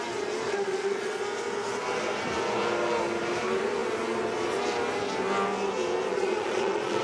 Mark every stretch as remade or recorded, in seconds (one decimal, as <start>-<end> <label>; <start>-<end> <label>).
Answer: 0.0-0.5 recorded; 0.5-1.2 remade; 1.2-6.1 recorded; 6.1-7.0 remade